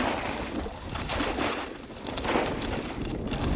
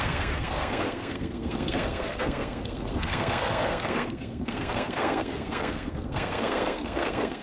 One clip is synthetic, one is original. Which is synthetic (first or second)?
second